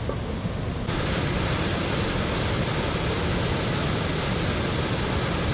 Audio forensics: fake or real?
real